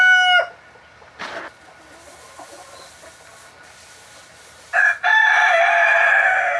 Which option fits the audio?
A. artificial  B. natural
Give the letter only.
B